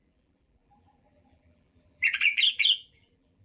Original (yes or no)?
no